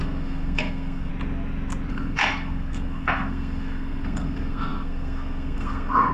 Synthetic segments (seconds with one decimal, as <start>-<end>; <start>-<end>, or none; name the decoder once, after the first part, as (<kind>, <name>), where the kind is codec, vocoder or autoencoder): 0.0-1.1 (codec, SNAC); 1.9-6.1